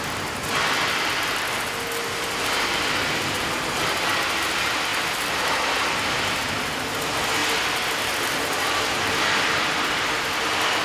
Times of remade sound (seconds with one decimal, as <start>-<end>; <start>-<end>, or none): none